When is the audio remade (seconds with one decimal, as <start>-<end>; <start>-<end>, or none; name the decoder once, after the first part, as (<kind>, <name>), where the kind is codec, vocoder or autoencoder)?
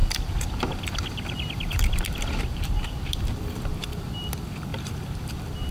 0.0-5.7 (vocoder, BigVGAN v2)